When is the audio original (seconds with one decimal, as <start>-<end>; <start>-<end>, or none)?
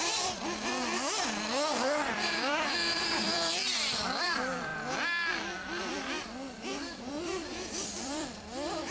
0.7-2.1; 4.7-5.8